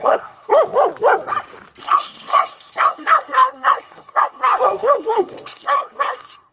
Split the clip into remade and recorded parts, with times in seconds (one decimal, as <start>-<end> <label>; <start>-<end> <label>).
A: 0.0-0.5 remade; 0.5-1.8 recorded; 1.8-6.5 remade